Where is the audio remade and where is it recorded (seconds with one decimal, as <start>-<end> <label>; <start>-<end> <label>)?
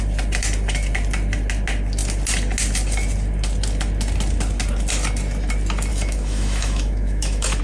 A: 0.0-5.9 recorded; 5.9-7.6 remade